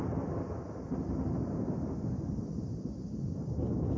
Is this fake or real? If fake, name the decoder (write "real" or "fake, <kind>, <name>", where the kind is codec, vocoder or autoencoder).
real